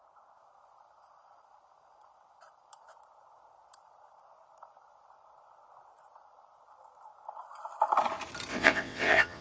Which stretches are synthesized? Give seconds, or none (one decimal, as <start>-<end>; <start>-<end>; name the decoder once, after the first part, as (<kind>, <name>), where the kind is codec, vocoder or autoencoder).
8.5-9.4 (vocoder, WaveNeXt)